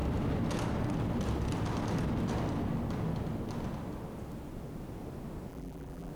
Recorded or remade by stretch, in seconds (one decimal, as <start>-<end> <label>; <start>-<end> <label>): 0.0-5.5 recorded; 5.5-6.1 remade